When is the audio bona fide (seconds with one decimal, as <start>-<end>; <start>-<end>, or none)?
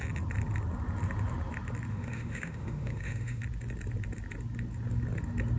0.0-1.9; 3.4-5.6